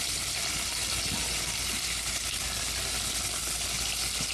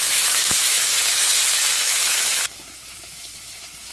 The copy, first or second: second